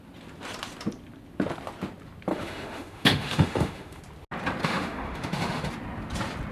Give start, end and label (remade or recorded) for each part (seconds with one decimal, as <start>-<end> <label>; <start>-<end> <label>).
0.0-2.3 recorded; 2.3-4.0 remade; 4.0-4.6 recorded; 4.6-5.7 remade; 5.7-6.5 recorded